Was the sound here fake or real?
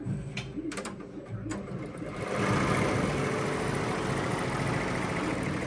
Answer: real